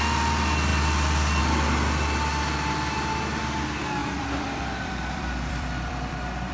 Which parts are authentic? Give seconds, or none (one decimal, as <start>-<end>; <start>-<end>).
0.0-4.0